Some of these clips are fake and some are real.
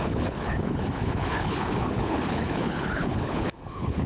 fake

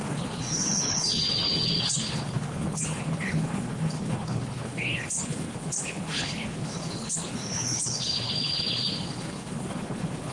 fake